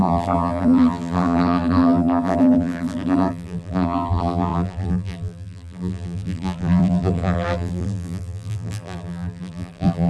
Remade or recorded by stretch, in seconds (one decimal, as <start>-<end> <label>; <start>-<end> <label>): 0.0-10.1 remade